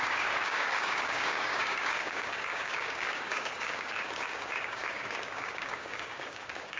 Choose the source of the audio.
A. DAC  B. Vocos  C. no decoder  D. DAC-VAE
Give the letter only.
A